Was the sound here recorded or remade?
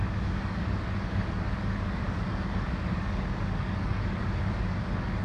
remade